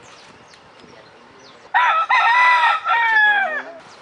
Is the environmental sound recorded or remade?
recorded